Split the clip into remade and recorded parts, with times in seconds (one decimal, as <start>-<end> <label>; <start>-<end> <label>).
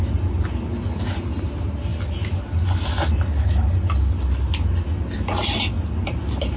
0.0-6.6 recorded